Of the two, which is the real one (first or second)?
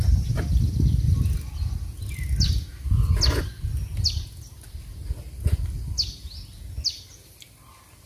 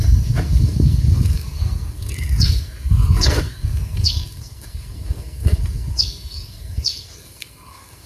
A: first